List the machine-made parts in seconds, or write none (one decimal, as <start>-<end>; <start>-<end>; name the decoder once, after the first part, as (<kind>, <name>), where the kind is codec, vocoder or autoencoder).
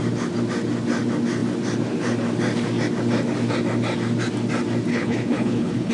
4.9-5.9 (codec, HILCodec)